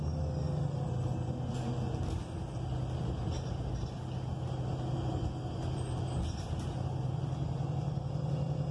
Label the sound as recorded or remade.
recorded